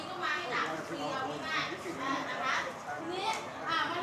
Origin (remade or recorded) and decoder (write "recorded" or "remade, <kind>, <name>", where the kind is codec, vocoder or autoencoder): recorded